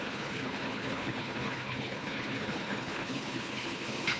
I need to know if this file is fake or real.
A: fake